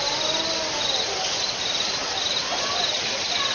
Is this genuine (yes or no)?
yes